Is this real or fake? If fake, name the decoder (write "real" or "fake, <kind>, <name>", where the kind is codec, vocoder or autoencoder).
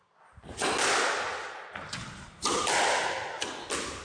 real